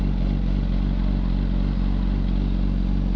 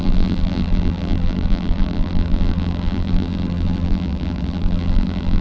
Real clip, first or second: first